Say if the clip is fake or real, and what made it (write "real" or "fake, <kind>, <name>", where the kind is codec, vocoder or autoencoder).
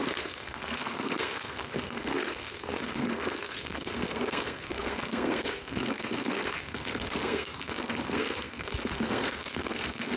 fake, codec, SNAC